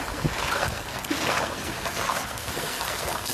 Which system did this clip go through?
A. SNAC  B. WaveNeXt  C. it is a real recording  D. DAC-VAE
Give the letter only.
A